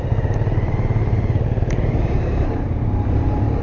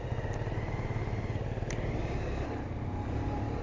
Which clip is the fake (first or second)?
first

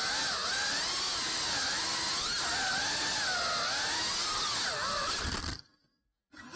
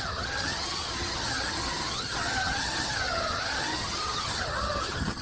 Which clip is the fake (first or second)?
second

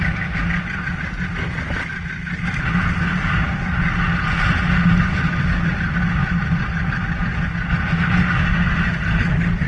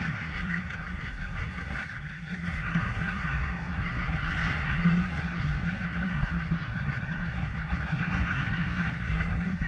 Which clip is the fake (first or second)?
second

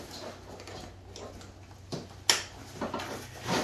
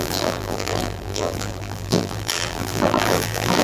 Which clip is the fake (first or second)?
second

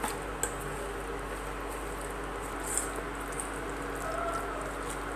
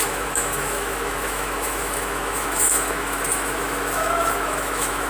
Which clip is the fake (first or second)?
second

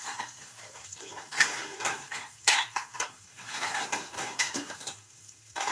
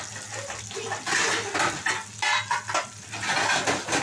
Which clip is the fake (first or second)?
first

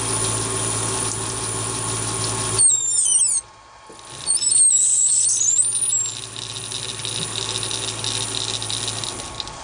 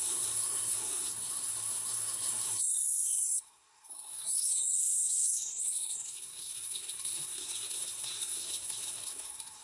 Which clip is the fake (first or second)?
second